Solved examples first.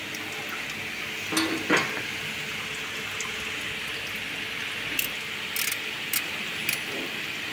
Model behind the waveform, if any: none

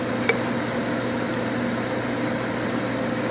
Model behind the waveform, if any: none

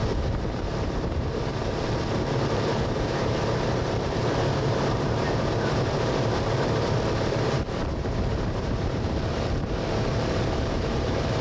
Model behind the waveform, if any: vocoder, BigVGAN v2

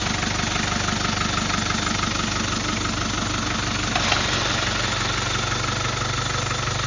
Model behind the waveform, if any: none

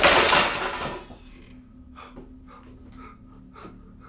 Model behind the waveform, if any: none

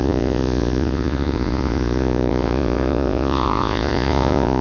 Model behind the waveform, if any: vocoder, Vocos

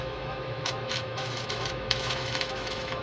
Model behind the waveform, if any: autoencoder, DAC-VAE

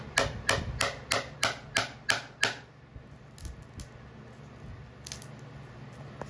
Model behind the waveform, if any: none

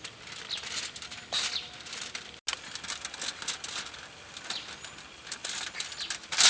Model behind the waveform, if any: none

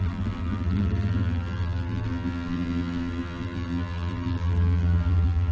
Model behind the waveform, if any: vocoder, BigVGAN v2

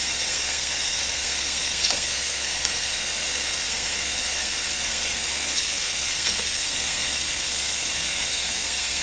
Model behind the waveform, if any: codec, SNAC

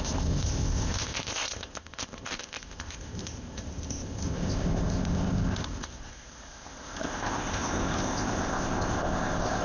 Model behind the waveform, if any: codec, ZipCodec